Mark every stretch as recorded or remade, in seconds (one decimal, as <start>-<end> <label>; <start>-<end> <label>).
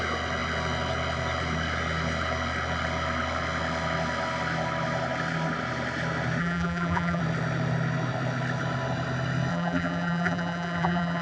0.0-6.4 recorded; 6.4-7.2 remade; 7.2-9.5 recorded; 9.5-11.2 remade